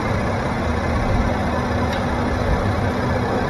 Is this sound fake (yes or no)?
no